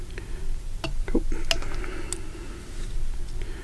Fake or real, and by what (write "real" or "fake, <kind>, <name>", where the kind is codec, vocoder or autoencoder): real